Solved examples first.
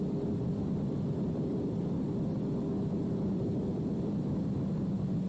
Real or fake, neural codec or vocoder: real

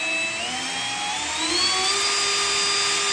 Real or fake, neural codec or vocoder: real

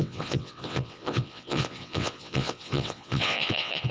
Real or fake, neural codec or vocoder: fake, vocoder, WaveNeXt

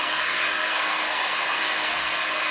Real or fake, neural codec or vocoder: fake, codec, SNAC